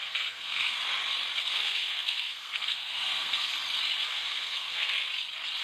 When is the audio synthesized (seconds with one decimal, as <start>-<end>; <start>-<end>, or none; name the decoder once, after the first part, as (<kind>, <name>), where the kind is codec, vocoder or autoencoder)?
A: 0.0-0.8 (codec, SNAC); 1.4-3.5; 4.1-5.0